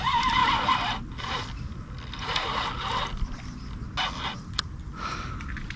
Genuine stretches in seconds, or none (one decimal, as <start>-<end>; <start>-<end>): 0.0-5.8